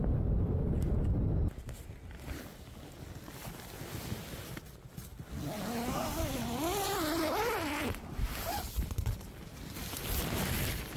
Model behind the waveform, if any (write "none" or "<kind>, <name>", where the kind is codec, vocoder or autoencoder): none